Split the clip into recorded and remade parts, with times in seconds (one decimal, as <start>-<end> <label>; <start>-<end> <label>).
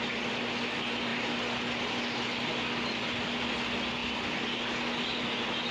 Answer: 0.0-5.7 recorded